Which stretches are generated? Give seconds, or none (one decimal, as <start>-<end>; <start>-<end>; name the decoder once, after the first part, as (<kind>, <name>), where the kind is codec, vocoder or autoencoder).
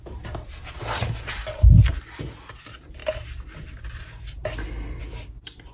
none